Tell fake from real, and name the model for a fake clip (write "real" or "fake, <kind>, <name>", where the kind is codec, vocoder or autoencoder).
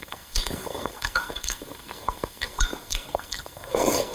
fake, codec, SNAC